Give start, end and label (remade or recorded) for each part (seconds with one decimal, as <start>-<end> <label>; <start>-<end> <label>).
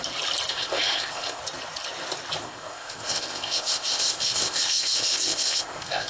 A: 0.0-0.5 recorded; 0.5-1.4 remade; 1.4-2.4 recorded; 2.4-6.1 remade